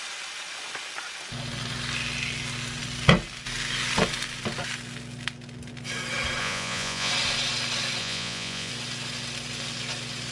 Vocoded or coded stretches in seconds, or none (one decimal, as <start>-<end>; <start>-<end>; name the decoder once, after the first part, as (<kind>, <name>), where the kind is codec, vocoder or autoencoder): 6.4-7.1 (vocoder, Vocos); 8.0-8.7